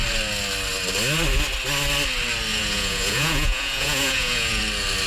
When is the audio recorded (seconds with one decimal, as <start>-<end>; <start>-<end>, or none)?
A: 0.0-2.5; 4.6-5.1